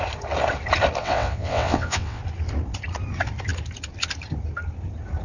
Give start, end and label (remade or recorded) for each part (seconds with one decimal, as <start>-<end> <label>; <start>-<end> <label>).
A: 0.0-1.0 recorded; 1.0-2.2 remade; 2.2-5.2 recorded